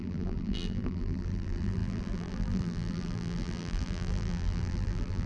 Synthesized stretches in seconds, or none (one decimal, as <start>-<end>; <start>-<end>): 0.0-5.3